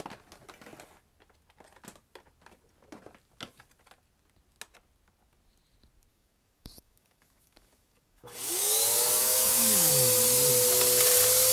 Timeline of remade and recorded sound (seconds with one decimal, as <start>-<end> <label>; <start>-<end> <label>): 0.0-6.1 recorded; 6.1-9.9 remade; 9.9-11.5 recorded